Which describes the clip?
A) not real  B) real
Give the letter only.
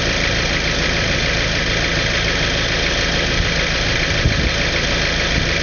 B